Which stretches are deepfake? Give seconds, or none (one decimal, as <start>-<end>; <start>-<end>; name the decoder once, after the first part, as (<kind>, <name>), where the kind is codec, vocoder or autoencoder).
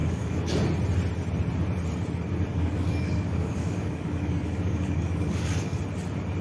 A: 0.0-0.6 (codec, DAC); 2.5-5.8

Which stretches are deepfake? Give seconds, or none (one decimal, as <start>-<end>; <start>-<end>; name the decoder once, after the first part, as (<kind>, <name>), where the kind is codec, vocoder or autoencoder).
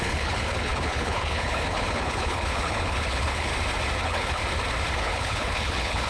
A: 0.0-3.5 (codec, HILCodec); 4.0-4.4; 5.0-6.1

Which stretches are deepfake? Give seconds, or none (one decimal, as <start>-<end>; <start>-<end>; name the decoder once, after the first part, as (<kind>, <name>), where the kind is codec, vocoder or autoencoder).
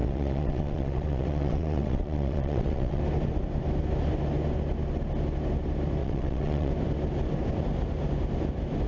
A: 0.0-3.0 (vocoder, WaveNeXt); 6.0-6.7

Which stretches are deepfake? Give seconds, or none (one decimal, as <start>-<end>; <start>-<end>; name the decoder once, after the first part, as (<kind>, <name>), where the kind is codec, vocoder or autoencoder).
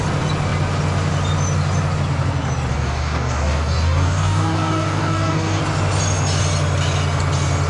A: 2.7-5.6 (codec, DAC)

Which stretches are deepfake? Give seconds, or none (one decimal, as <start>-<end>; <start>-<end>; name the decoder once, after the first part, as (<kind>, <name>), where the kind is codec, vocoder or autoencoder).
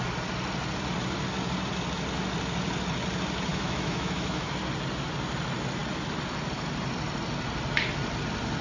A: 3.5-4.5 (autoencoder, DAC-VAE)